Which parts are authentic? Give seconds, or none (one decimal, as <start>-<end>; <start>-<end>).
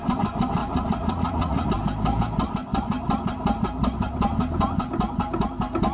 0.0-0.6; 1.7-5.9